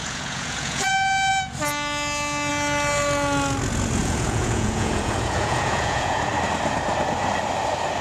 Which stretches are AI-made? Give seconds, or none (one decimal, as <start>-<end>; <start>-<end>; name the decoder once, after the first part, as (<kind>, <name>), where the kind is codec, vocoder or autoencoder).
0.0-0.9 (vocoder, Vocos); 4.0-6.3